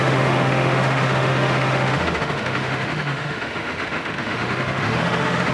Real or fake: fake